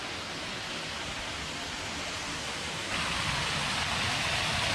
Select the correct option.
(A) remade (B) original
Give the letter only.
B